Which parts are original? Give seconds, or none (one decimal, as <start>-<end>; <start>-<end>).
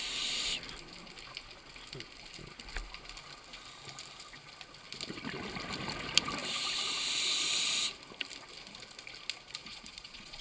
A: 0.0-9.6